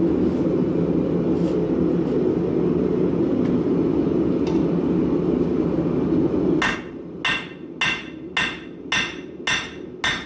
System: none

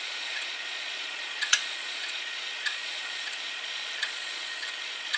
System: vocoder, Vocos